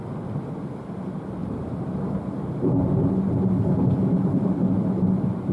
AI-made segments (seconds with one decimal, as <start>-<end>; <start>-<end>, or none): 1.4-3.3

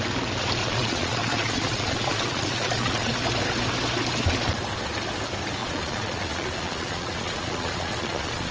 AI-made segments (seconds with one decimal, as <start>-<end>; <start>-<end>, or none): 0.6-3.1; 5.6-8.5

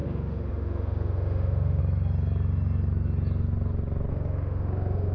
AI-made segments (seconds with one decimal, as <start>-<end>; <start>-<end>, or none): 0.0-1.8; 4.1-5.1

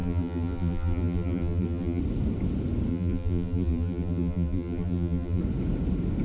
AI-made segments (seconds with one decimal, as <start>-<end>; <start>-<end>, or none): 0.0-2.0; 2.9-5.4

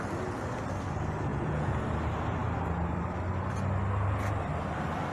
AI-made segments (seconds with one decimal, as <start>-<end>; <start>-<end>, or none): 1.3-1.8

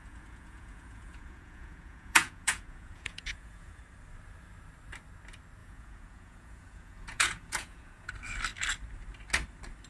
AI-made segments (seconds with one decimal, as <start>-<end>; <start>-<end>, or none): 0.0-3.8; 5.6-8.1

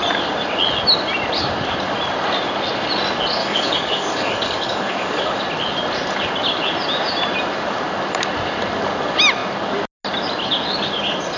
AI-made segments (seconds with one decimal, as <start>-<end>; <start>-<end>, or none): 3.4-5.4